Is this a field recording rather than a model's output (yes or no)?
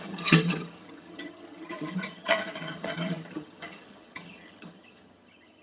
no